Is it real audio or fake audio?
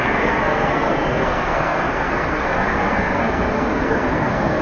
fake